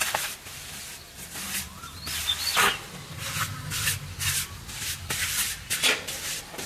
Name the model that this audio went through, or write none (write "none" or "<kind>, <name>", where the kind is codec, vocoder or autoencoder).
vocoder, BigVGAN v2